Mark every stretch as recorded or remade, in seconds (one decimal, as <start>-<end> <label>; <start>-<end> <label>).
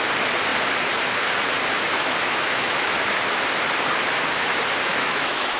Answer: 0.0-1.9 recorded; 1.9-2.9 remade; 2.9-4.9 recorded; 4.9-5.6 remade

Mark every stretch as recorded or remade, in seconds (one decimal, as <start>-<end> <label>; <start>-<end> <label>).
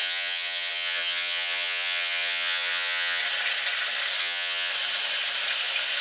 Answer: 0.0-3.2 remade; 3.2-4.2 recorded; 4.2-4.7 remade; 4.7-6.0 recorded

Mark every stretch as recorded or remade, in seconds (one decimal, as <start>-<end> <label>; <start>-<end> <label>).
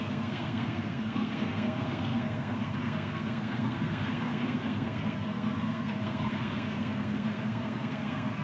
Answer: 0.0-8.4 remade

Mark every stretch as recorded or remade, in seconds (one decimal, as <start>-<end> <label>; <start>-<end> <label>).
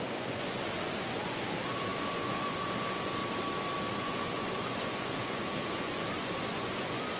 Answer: 0.0-3.2 remade; 3.2-3.9 recorded; 3.9-7.2 remade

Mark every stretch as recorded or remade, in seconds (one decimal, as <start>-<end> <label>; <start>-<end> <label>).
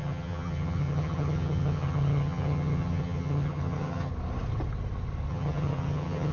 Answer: 0.0-4.1 remade; 4.1-5.3 recorded; 5.3-6.3 remade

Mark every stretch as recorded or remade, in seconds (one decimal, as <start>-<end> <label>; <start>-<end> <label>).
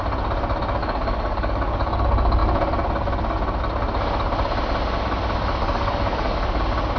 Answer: 0.0-0.8 recorded; 0.8-2.0 remade; 2.0-5.6 recorded; 5.6-6.6 remade; 6.6-7.0 recorded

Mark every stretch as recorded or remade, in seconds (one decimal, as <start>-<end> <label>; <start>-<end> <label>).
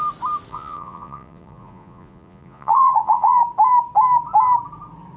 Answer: 0.0-0.5 recorded; 0.5-3.4 remade; 3.4-5.2 recorded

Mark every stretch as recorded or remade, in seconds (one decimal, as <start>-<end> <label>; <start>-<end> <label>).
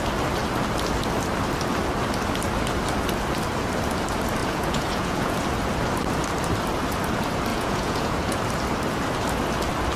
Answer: 0.0-4.4 recorded; 4.4-5.4 remade; 5.4-7.5 recorded; 7.5-8.4 remade; 8.4-10.0 recorded